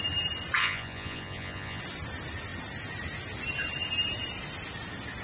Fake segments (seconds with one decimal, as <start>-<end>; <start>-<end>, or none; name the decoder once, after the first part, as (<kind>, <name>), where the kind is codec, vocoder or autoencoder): 0.6-1.8 (vocoder, Vocos)